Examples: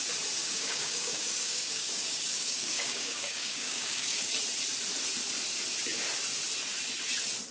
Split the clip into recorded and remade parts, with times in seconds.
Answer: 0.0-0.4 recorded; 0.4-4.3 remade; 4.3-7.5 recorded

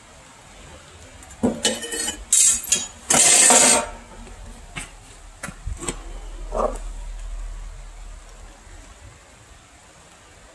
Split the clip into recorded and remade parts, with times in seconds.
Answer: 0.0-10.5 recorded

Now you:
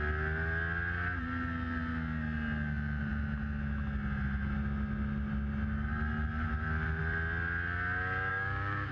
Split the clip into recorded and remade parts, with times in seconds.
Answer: 0.0-8.3 recorded; 8.3-8.9 remade